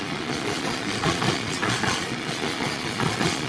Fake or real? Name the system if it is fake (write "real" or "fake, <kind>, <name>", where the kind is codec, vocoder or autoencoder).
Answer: fake, vocoder, Vocos